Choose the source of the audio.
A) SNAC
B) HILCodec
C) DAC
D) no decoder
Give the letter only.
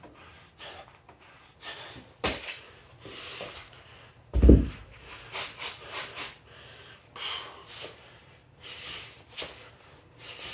D